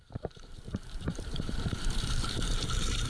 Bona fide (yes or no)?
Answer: no